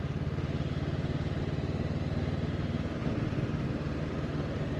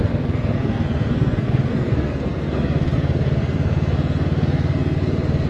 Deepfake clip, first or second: second